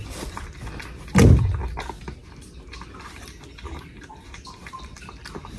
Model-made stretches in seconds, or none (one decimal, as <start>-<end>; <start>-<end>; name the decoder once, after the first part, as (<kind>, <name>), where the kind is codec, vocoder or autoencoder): none